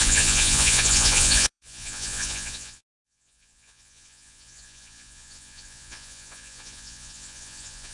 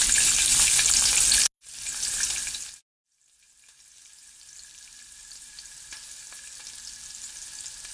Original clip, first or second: second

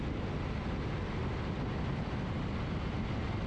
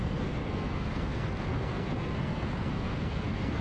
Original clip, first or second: first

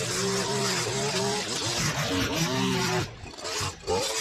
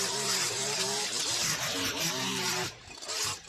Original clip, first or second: first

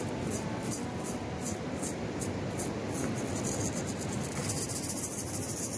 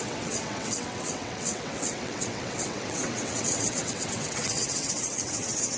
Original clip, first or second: first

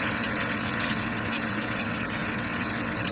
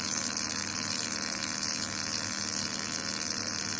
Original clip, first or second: second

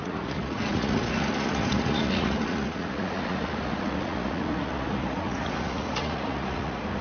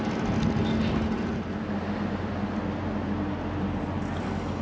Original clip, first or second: second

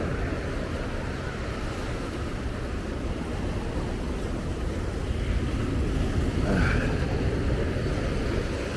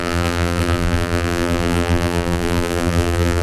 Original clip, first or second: first